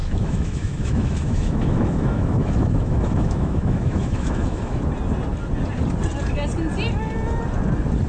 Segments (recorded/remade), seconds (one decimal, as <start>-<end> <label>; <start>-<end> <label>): 0.0-4.8 remade; 4.8-8.1 recorded